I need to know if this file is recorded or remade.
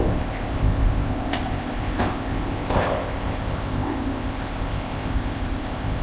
remade